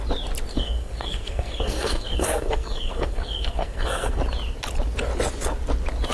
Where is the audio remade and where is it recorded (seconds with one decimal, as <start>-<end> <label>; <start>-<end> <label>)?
0.0-0.5 recorded; 0.5-4.2 remade; 4.2-6.1 recorded